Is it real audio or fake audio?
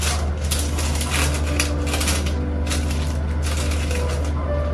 real